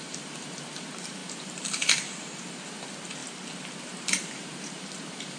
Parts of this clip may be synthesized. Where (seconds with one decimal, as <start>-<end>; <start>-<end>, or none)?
0.0-3.2; 4.3-5.4